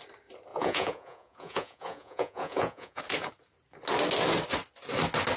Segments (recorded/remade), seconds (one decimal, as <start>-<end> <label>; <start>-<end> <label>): 0.0-0.5 recorded; 0.5-3.0 remade; 3.0-5.4 recorded

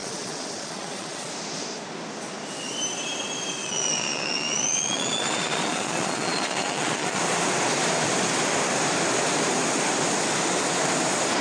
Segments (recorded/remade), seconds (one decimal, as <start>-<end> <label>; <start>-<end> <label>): 0.0-1.3 remade; 1.3-3.6 recorded; 3.6-7.2 remade; 7.2-11.4 recorded

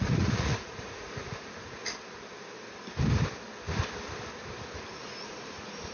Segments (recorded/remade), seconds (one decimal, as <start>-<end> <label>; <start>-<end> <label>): 0.0-1.8 remade; 1.8-4.9 recorded; 4.9-5.9 remade

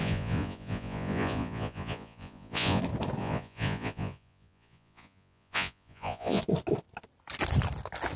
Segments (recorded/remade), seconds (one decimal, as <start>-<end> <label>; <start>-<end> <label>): 0.0-2.8 remade; 2.8-3.2 recorded; 3.2-6.4 remade; 6.4-8.2 recorded

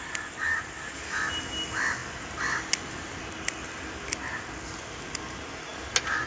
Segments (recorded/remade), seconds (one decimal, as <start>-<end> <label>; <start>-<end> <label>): 0.0-6.3 recorded

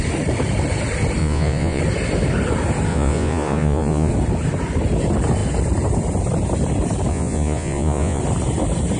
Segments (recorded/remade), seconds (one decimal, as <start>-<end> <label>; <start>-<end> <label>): 0.0-1.2 recorded; 1.2-1.8 remade; 1.8-2.9 recorded; 2.9-4.1 remade; 4.1-7.1 recorded; 7.1-8.2 remade; 8.2-9.0 recorded